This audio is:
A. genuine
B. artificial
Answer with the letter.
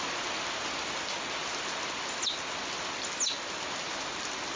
A